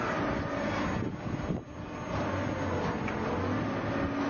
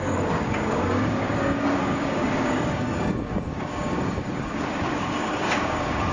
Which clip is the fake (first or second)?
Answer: second